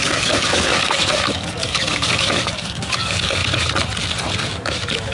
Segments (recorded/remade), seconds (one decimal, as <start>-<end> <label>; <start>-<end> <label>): 0.0-3.4 remade; 3.4-4.5 recorded; 4.5-5.1 remade